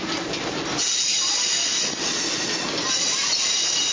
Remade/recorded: recorded